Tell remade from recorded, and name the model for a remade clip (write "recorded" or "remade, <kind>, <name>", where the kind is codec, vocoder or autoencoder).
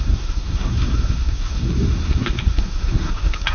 remade, codec, SNAC